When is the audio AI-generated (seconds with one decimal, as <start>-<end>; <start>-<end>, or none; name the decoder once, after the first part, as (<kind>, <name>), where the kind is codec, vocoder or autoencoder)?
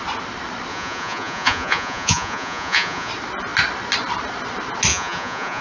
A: 0.7-3.1 (vocoder, Vocos); 4.9-5.6